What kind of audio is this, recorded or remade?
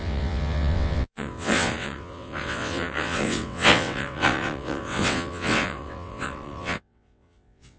remade